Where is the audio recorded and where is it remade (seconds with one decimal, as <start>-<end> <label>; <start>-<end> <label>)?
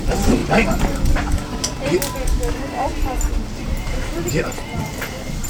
0.0-0.4 remade; 0.4-2.5 recorded; 2.5-2.9 remade; 2.9-3.6 recorded; 3.6-5.5 remade